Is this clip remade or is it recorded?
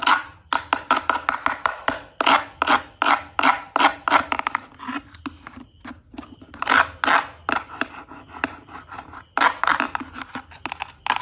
recorded